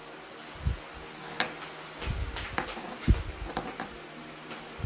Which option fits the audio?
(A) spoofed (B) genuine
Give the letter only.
B